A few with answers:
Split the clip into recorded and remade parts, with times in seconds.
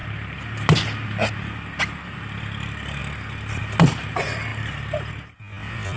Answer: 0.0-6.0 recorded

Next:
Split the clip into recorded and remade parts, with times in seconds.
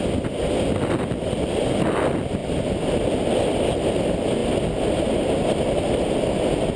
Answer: 0.0-6.8 recorded